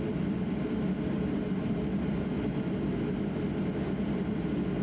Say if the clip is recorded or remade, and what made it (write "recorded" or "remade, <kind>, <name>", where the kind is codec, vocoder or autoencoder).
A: recorded